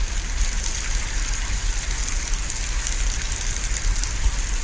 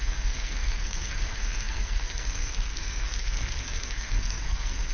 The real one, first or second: first